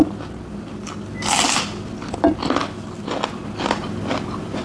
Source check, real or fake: real